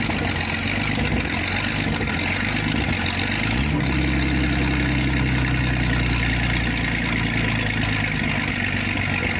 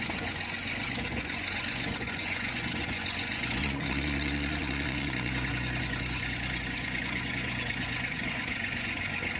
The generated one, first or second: second